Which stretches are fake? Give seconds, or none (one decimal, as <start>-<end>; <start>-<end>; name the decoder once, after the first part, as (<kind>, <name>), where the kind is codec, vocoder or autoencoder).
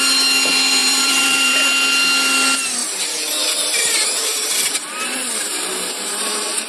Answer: 0.8-1.7 (vocoder, BigVGAN v2); 2.8-6.7